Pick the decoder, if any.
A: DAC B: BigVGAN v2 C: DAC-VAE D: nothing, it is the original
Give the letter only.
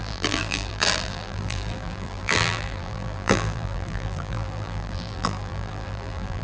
B